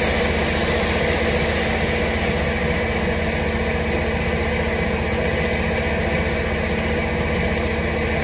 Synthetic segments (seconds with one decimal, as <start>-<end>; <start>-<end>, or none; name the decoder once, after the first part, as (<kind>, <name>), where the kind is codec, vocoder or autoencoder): none